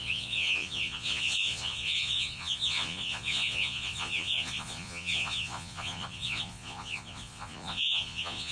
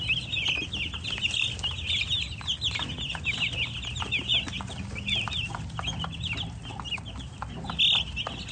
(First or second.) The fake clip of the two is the first